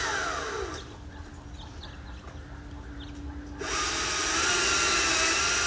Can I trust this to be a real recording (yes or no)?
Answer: yes